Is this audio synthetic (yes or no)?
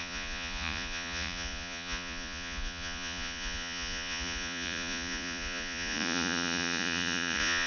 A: yes